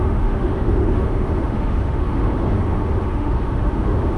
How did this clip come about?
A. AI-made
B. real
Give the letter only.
A